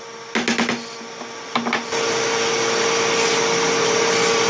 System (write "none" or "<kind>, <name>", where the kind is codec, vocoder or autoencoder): none